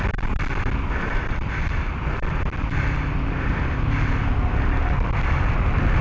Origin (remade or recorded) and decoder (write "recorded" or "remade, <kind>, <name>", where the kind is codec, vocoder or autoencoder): recorded